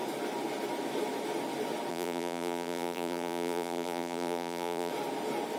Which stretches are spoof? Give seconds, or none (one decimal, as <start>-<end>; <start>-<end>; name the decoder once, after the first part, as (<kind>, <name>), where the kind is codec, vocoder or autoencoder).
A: 1.9-4.9 (vocoder, BigVGAN v2)